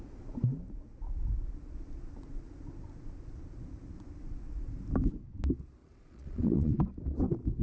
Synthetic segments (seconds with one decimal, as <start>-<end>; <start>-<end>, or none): 5.8-6.7